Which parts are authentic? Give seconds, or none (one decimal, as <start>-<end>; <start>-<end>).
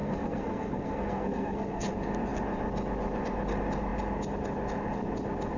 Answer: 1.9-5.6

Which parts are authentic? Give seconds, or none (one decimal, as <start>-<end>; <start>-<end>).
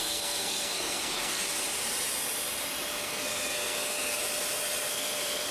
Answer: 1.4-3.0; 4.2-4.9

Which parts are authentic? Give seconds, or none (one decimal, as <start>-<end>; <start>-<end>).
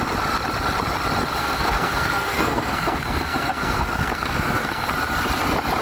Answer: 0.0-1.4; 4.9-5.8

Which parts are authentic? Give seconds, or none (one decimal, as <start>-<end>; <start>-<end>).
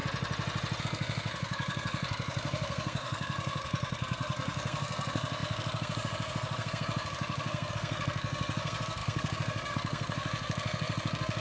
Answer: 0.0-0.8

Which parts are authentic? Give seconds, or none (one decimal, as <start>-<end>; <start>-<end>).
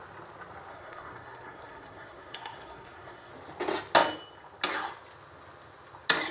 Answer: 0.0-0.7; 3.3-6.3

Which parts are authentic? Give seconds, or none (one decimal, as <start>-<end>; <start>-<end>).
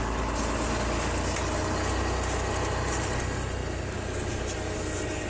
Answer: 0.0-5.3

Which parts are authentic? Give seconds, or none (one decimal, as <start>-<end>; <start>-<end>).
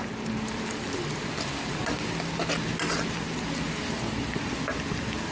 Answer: 0.0-5.3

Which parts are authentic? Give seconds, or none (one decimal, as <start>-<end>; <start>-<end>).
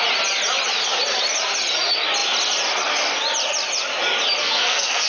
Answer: 0.0-4.4